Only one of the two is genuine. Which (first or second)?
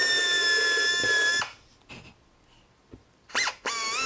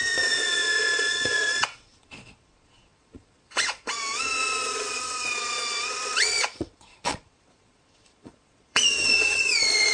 first